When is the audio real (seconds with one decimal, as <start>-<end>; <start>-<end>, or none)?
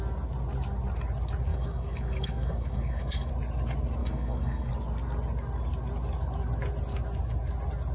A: 0.0-1.5; 3.3-4.0; 4.7-7.9